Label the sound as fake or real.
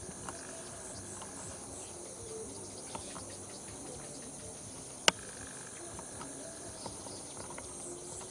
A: real